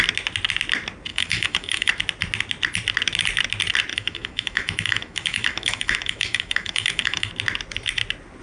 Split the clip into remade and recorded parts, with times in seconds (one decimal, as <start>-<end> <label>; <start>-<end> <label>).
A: 0.0-1.1 recorded; 1.1-1.9 remade; 1.9-3.9 recorded; 3.9-7.3 remade; 7.3-8.4 recorded

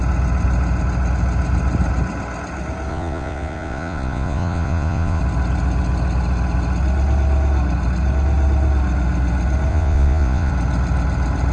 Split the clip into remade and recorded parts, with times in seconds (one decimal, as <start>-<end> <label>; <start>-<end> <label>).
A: 0.0-2.9 recorded; 2.9-5.2 remade; 5.2-9.7 recorded; 9.7-10.5 remade; 10.5-11.5 recorded

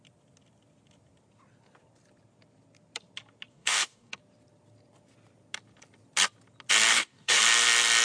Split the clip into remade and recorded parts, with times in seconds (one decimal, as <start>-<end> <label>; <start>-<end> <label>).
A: 0.0-3.5 recorded; 3.5-4.2 remade; 4.2-6.9 recorded; 6.9-7.4 remade; 7.4-8.0 recorded